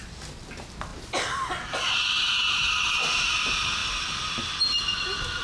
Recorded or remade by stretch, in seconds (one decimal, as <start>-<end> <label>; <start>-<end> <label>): 0.0-5.4 recorded